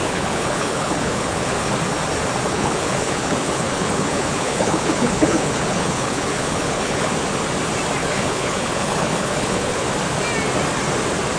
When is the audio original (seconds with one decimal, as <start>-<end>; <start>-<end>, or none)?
1.7-2.5; 7.1-8.0; 9.9-11.4